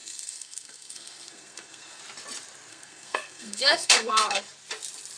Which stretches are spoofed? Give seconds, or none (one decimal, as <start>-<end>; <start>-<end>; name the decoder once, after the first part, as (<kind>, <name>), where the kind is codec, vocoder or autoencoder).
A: 0.0-2.0 (codec, SNAC); 2.7-4.4